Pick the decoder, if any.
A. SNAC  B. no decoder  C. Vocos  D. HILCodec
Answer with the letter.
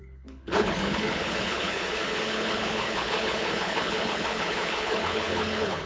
D